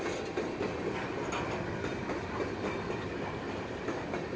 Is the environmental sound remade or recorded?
recorded